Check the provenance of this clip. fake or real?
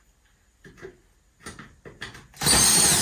real